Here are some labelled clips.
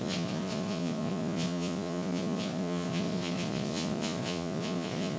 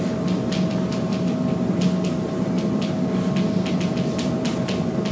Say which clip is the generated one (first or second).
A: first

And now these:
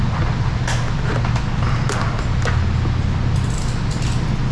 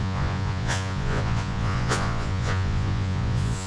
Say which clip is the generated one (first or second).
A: second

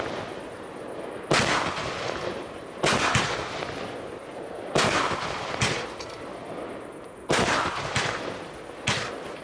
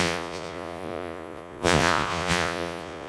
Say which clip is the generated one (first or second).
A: second